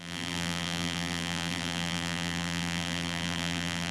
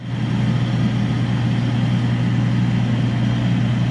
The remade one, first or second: first